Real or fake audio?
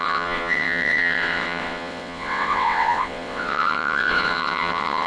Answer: fake